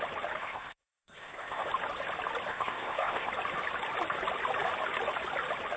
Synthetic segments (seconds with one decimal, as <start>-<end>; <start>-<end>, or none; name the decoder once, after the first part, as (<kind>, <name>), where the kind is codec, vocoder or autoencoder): 0.4-1.7 (codec, ZipCodec); 2.5-3.3